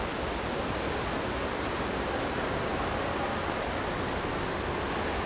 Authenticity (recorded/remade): recorded